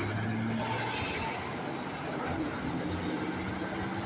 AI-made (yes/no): no